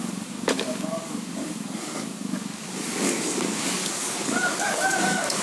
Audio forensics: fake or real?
fake